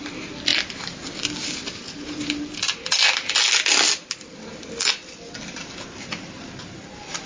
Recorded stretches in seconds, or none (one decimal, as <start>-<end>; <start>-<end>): 0.0-7.3